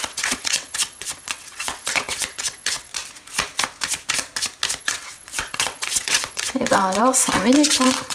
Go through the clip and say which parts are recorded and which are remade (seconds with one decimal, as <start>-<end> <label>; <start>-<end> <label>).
0.0-2.9 remade; 2.9-4.8 recorded; 4.8-8.1 remade